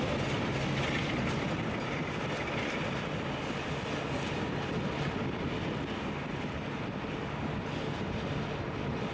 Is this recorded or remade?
recorded